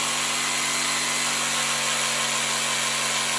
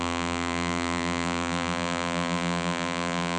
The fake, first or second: second